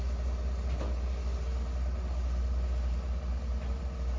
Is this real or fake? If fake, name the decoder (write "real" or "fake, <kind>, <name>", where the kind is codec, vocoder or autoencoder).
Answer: real